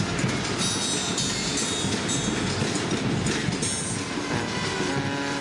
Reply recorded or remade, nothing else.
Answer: recorded